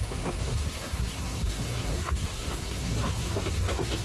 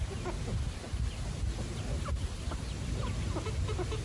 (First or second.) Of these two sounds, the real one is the second